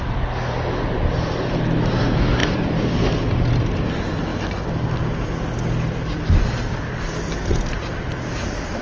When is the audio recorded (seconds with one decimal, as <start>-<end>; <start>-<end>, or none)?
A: 0.0-8.8

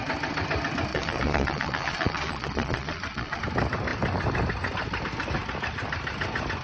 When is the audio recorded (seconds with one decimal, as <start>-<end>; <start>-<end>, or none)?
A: 0.0-0.9; 3.4-6.6

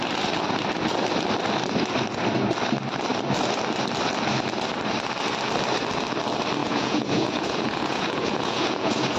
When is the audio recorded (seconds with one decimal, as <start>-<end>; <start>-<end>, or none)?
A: 0.0-6.6

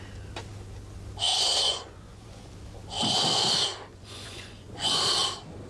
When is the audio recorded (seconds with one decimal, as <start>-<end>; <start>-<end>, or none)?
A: 0.0-1.3; 2.5-3.9; 5.0-5.7

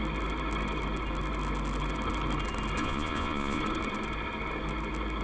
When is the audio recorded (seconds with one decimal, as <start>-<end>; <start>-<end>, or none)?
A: 0.0-2.8; 3.6-5.2